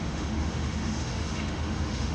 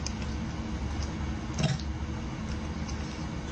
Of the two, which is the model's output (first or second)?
first